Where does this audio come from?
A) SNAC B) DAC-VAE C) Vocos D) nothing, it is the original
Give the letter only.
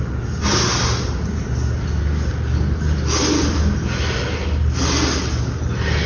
D